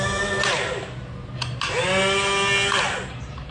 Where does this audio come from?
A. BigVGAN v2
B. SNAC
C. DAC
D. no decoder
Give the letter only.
D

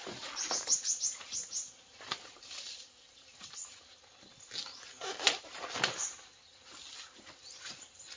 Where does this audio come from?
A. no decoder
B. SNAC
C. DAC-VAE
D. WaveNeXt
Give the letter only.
A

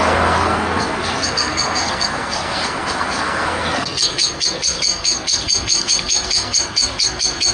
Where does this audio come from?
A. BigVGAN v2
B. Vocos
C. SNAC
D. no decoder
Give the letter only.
C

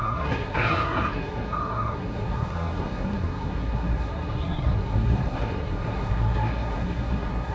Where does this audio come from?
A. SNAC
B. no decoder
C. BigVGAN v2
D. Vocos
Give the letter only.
A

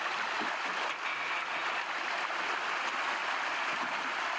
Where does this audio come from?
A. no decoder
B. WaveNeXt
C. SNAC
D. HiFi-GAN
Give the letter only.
A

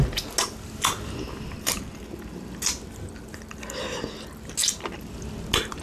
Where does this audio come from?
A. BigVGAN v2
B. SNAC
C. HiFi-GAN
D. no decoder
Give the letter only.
D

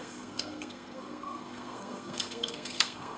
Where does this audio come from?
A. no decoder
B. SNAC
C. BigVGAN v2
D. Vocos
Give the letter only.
B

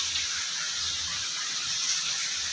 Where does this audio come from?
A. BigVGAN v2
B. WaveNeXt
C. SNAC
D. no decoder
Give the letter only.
D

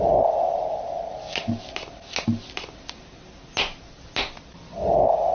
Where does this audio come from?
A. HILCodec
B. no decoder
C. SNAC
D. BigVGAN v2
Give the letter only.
B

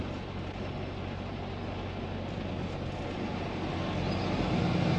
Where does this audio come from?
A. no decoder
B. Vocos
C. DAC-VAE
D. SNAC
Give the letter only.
A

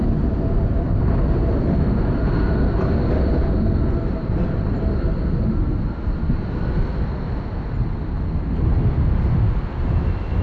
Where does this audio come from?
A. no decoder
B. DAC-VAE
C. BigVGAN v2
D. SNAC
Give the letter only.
A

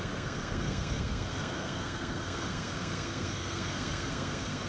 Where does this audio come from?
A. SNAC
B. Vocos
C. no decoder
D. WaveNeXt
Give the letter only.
A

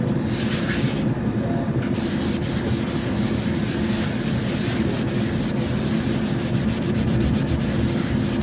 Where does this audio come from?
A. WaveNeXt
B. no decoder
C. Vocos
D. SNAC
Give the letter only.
B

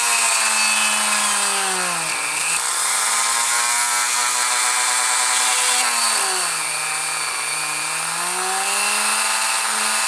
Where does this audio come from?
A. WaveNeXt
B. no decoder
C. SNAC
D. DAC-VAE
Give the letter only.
B